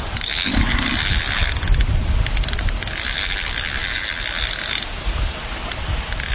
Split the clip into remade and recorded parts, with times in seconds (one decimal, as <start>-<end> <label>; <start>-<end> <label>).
0.0-6.3 recorded